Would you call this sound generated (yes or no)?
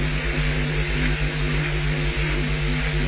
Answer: no